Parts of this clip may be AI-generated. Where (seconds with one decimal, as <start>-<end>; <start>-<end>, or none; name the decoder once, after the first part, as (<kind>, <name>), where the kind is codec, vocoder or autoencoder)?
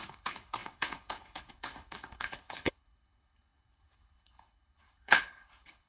0.0-5.9 (codec, HILCodec)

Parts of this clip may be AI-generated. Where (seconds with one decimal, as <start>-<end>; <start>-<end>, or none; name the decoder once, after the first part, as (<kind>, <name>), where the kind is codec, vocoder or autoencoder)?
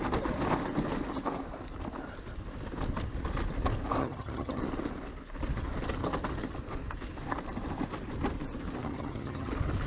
4.0-4.6 (vocoder, HiFi-GAN); 8.8-9.5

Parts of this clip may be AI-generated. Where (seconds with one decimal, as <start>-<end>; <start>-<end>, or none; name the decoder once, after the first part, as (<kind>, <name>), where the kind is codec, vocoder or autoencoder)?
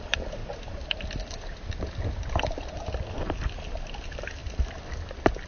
none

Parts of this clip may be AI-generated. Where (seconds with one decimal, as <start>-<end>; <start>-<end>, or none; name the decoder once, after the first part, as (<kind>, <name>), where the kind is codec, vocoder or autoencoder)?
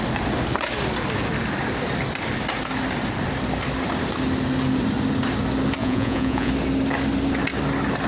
5.8-6.5 (vocoder, Vocos)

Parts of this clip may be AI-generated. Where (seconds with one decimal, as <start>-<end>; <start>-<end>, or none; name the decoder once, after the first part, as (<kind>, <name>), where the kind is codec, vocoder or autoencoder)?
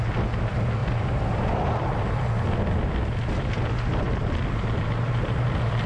none